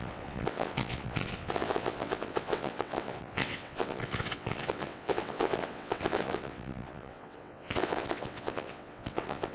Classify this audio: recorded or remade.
remade